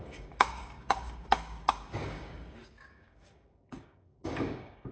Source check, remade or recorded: remade